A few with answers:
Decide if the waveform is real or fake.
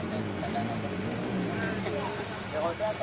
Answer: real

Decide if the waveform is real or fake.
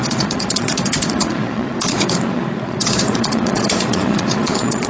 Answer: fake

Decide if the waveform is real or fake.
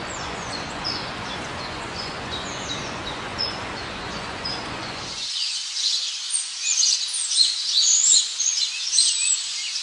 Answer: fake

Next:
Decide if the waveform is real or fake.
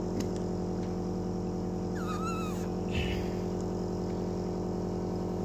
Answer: real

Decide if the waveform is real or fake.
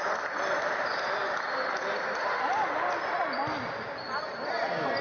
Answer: real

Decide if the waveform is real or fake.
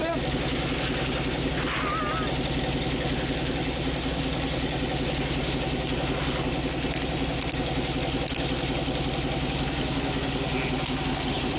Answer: real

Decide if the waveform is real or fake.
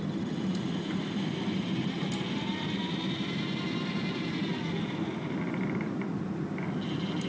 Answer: real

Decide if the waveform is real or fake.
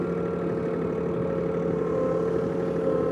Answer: real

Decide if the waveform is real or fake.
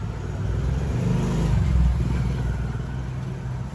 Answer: real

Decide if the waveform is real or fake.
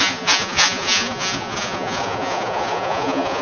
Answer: fake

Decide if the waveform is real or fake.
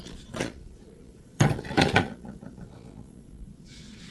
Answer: fake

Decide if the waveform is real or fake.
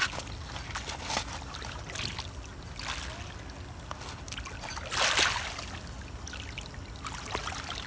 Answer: real